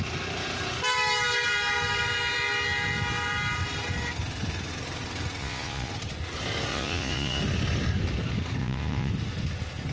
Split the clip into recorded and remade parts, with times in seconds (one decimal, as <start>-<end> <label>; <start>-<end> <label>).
0.0-5.4 recorded; 5.4-5.9 remade; 5.9-6.7 recorded; 6.7-7.4 remade; 7.4-8.6 recorded; 8.6-9.1 remade; 9.1-9.9 recorded